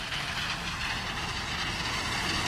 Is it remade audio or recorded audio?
recorded